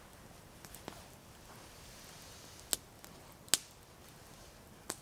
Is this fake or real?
real